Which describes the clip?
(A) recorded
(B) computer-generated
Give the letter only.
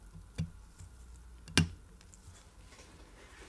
A